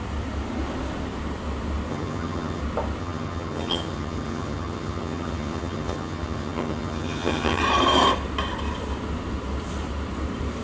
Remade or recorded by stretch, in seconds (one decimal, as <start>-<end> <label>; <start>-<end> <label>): 0.0-1.9 recorded; 1.9-2.6 remade; 2.6-3.0 recorded; 3.0-7.6 remade; 7.6-10.6 recorded